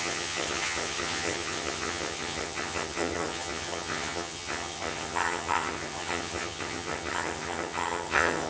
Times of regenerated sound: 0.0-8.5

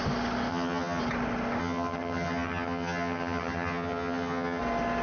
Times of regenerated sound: 0.5-1.0; 1.6-4.6

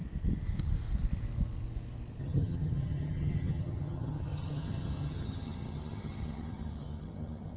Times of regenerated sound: 2.2-7.6

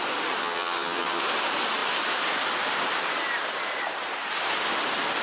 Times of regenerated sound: 0.4-1.2

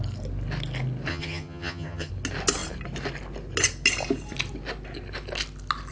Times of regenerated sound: 1.1-2.1

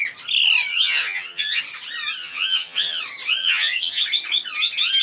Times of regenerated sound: 0.7-1.6; 2.2-3.0; 3.4-4.0

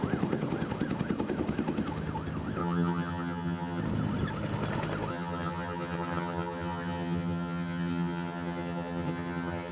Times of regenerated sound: 2.6-3.8; 5.1-9.7

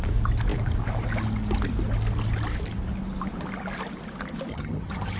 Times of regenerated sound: 4.5-5.2